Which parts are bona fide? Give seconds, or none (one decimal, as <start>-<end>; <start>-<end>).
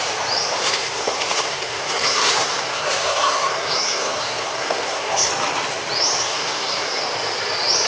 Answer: 0.0-0.6; 5.3-6.2; 7.0-7.9